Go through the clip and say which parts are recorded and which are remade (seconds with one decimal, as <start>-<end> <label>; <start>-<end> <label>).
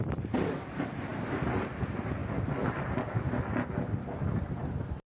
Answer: 0.0-2.2 remade; 2.2-4.3 recorded; 4.3-5.2 remade